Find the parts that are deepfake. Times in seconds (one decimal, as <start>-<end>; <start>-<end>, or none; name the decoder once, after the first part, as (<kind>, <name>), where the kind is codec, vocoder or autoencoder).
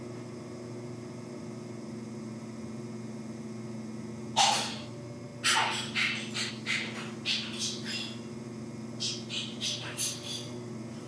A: none